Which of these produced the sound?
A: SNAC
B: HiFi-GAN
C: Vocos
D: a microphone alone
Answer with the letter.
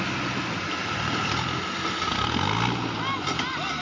D